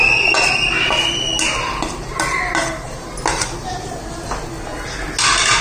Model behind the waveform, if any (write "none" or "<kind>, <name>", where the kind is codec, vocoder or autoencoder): none